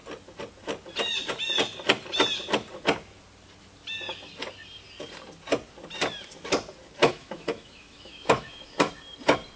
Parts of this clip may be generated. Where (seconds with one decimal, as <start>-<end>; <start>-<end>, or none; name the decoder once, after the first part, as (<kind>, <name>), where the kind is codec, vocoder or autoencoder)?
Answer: 7.0-8.9 (autoencoder, DAC-VAE)